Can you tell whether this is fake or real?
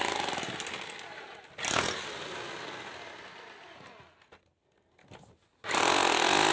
real